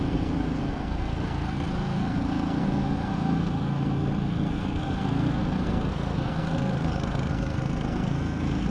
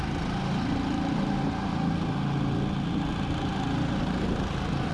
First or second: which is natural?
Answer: second